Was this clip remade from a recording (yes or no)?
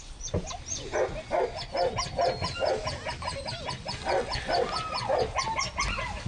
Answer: no